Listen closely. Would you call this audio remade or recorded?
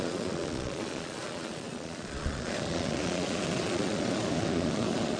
remade